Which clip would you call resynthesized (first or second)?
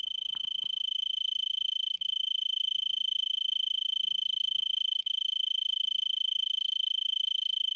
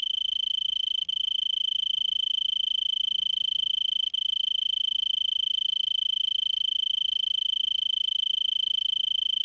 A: first